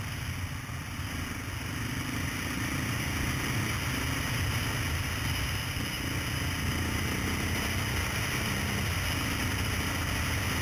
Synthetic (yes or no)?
no